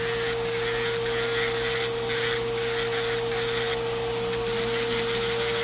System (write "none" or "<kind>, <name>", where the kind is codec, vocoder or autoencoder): none